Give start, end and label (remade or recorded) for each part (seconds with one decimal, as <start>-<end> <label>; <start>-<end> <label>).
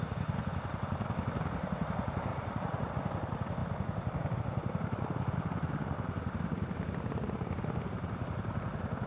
0.0-2.3 recorded; 2.3-2.9 remade; 2.9-9.1 recorded